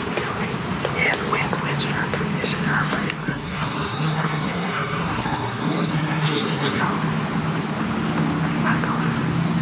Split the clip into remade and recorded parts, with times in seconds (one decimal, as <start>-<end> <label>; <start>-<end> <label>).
0.0-3.2 recorded; 3.2-6.8 remade; 6.8-9.6 recorded